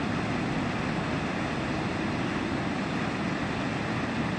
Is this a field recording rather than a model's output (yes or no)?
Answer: yes